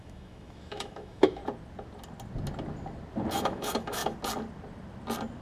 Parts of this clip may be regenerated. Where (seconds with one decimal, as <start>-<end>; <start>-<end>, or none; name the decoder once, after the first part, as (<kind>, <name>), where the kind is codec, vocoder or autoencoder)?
0.0-1.4 (autoencoder, DAC-VAE); 3.3-4.0